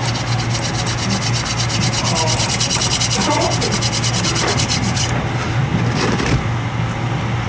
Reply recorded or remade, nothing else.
recorded